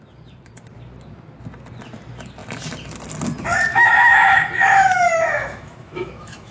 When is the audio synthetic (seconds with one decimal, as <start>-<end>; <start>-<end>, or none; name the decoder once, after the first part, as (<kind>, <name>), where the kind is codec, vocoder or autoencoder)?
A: 3.7-6.5 (autoencoder, DAC-VAE)